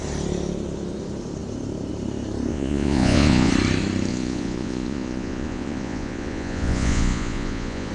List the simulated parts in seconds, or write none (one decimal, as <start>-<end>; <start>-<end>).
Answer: 2.5-3.5; 4.1-7.9